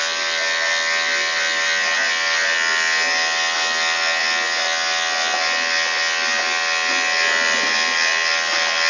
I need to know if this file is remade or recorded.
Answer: recorded